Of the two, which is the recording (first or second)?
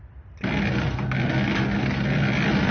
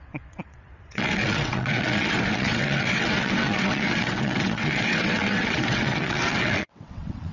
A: first